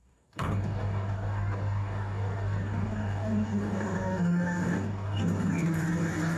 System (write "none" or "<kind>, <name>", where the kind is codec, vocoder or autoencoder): codec, DAC